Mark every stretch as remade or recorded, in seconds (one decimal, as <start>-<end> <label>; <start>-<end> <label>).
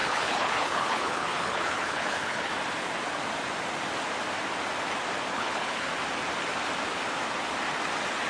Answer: 0.0-2.5 remade; 2.5-5.3 recorded; 5.3-5.9 remade; 5.9-8.3 recorded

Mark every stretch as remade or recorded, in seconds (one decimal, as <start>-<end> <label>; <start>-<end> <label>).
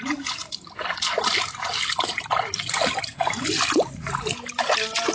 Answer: 0.0-5.1 recorded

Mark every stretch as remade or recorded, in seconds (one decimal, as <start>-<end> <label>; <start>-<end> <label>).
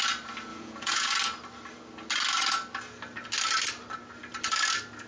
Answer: 0.0-0.5 recorded; 0.5-1.1 remade; 1.1-5.1 recorded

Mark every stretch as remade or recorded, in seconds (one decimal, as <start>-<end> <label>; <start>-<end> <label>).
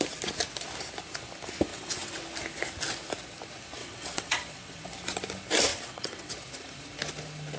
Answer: 0.0-1.7 recorded; 1.7-2.2 remade; 2.2-3.8 recorded; 3.8-4.9 remade; 4.9-5.7 recorded; 5.7-6.3 remade; 6.3-7.6 recorded